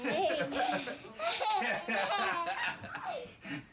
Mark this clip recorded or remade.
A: recorded